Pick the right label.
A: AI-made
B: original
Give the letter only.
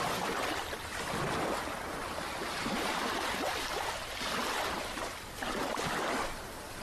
B